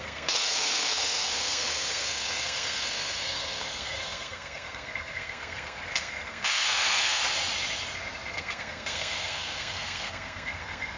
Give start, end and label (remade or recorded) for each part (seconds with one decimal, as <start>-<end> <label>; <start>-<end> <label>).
0.0-7.2 remade; 7.2-8.3 recorded; 8.3-11.0 remade